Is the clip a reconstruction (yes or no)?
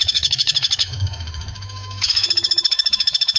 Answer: yes